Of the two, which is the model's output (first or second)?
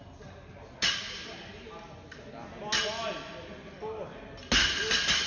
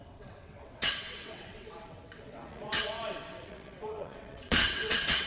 second